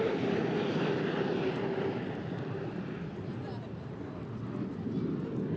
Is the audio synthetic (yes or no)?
no